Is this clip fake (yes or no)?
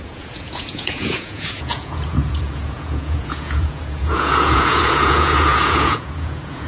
yes